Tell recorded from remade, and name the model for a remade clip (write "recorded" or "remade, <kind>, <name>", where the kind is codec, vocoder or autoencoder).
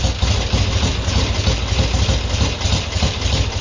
recorded